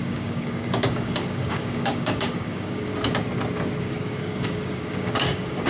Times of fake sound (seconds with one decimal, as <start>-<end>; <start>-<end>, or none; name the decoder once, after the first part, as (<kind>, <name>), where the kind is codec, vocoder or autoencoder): 0.0-2.9 (codec, DAC); 3.8-5.7

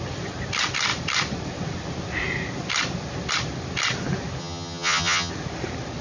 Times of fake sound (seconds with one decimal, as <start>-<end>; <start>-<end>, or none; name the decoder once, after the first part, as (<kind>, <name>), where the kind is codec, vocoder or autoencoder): 4.4-5.3 (vocoder, HiFi-GAN)

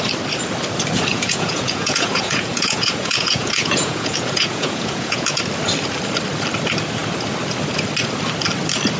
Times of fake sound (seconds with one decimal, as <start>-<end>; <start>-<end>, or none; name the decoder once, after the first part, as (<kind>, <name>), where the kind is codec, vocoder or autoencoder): 1.1-5.4 (vocoder, Vocos)

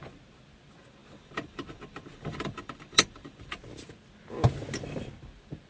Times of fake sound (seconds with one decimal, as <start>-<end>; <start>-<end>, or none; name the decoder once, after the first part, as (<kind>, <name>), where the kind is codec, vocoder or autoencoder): 1.0-3.5 (vocoder, BigVGAN v2)

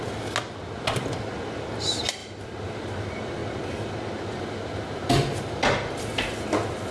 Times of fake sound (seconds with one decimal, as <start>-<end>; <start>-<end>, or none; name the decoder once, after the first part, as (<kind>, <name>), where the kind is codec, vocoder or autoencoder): 2.2-2.8 (vocoder, BigVGAN v2)

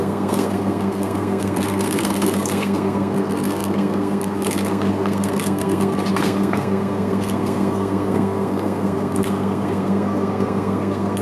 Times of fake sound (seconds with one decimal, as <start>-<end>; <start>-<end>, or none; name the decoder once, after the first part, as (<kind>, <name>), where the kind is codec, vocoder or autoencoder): 0.0-11.2 (codec, SNAC)